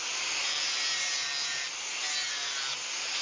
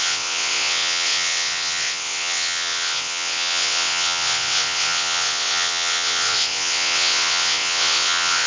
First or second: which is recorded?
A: first